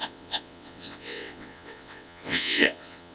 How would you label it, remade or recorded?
remade